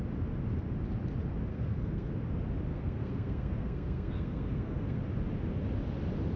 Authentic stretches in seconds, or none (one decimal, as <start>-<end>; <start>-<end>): 0.0-1.5; 2.1-2.7; 5.0-6.4